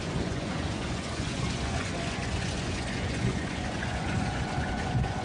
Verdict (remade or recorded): remade